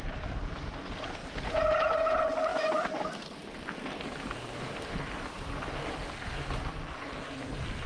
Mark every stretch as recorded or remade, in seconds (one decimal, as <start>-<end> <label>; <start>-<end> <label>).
0.0-2.5 recorded; 2.5-5.8 remade; 5.8-7.9 recorded

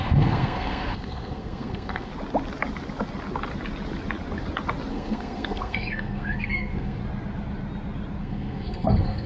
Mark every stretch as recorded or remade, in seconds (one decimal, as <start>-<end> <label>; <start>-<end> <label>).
0.0-2.1 remade; 2.1-4.9 recorded; 4.9-7.0 remade; 7.0-8.2 recorded; 8.2-9.3 remade

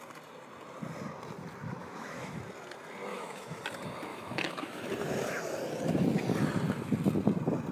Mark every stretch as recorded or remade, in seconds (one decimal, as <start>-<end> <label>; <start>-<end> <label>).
0.0-1.8 recorded; 1.8-2.4 remade; 2.4-3.1 recorded; 3.1-3.6 remade; 3.6-4.1 recorded; 4.1-4.8 remade; 4.8-7.7 recorded

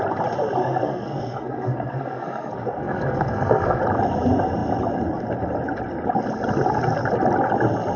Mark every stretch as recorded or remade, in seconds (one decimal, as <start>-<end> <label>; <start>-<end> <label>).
0.0-0.6 recorded; 0.6-3.8 remade; 3.8-8.0 recorded